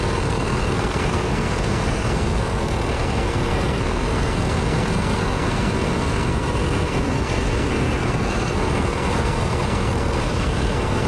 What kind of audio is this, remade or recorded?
remade